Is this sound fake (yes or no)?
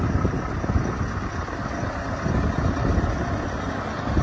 no